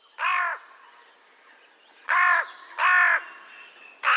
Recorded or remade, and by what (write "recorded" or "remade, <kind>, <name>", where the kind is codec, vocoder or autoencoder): recorded